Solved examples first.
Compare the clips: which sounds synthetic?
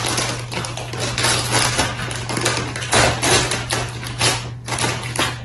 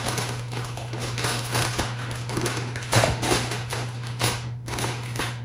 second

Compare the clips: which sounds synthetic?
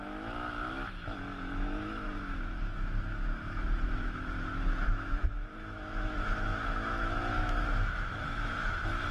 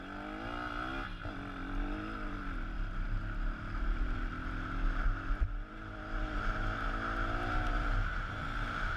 first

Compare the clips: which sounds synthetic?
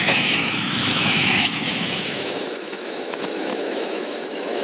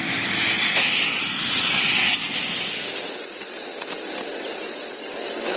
first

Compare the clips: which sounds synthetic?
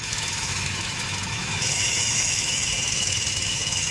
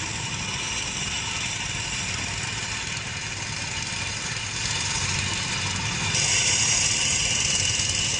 first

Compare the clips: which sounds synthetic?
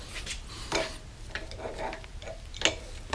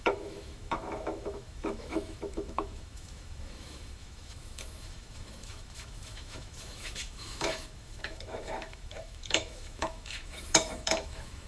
second